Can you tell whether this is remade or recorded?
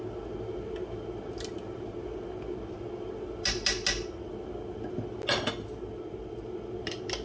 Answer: recorded